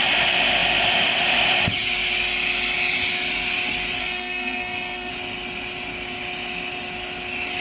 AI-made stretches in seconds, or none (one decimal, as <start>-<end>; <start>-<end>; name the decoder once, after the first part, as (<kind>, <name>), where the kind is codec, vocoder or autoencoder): 4.0-5.1 (codec, SNAC)